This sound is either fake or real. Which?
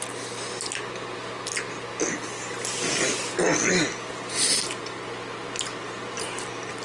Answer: real